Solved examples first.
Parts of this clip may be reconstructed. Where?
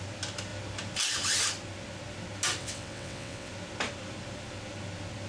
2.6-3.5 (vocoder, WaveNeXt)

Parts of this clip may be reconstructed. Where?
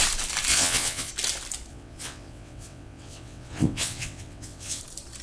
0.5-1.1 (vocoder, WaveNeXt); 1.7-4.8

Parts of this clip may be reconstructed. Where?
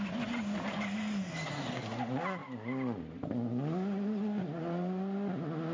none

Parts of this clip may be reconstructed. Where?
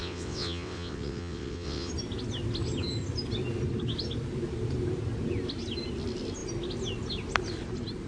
0.0-1.9 (vocoder, WaveNeXt)